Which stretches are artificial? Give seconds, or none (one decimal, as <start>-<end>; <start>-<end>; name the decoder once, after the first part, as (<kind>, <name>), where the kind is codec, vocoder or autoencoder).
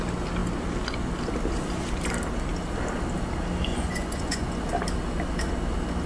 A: 3.7-4.6 (vocoder, Vocos)